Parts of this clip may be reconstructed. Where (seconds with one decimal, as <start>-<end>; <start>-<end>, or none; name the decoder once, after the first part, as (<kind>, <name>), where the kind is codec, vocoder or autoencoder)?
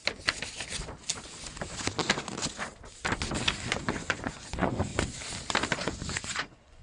3.7-4.9 (vocoder, Vocos); 5.8-6.8